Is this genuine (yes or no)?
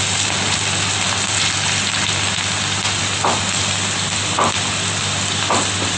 yes